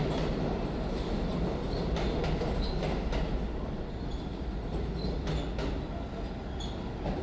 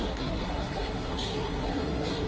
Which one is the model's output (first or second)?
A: second